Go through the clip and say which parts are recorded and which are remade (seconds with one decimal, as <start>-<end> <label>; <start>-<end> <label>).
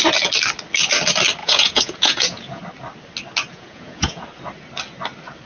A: 0.0-1.4 recorded; 1.4-2.6 remade; 2.6-3.5 recorded; 3.5-4.2 remade; 4.2-5.5 recorded